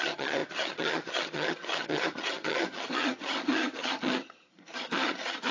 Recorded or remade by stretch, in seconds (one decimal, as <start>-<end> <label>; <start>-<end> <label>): 0.0-5.5 remade